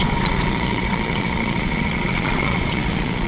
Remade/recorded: remade